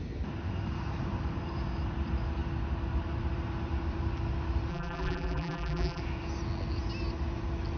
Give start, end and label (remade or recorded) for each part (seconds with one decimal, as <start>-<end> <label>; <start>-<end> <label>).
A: 0.0-4.7 recorded; 4.7-6.0 remade; 6.0-7.8 recorded